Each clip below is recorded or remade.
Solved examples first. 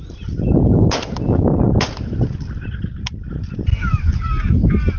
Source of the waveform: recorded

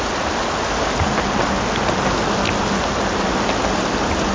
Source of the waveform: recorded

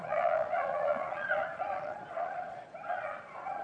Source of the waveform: remade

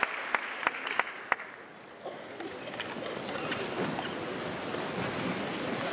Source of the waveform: recorded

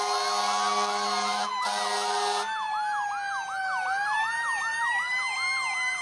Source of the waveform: recorded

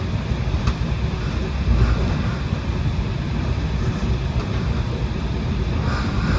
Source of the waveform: recorded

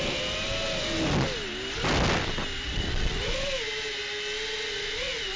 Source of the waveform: recorded